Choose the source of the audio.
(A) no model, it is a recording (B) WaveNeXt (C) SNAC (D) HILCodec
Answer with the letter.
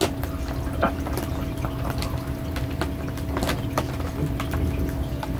A